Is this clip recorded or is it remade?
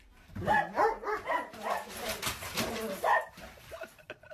remade